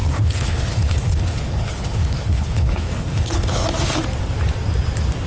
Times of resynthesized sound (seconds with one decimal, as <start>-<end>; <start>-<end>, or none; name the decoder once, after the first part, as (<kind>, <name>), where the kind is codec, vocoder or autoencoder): 0.0-3.6 (codec, HILCodec)